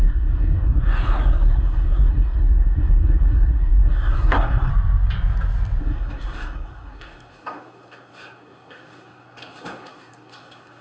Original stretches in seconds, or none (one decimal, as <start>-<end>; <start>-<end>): 4.7-5.8